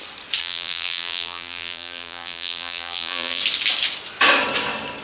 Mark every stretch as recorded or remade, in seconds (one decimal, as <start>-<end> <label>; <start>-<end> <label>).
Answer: 0.0-0.4 recorded; 0.4-3.4 remade; 3.4-5.0 recorded